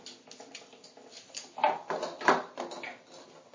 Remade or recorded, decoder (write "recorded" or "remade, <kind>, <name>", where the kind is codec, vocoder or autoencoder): recorded